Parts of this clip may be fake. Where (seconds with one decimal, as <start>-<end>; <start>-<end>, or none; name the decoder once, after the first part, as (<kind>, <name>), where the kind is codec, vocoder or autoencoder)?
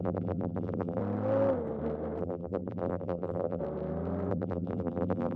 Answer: 0.0-1.0 (vocoder, BigVGAN v2); 2.2-3.6; 4.3-5.4